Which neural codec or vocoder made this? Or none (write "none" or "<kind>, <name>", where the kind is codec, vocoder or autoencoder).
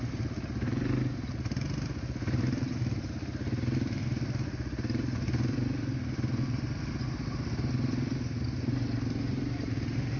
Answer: none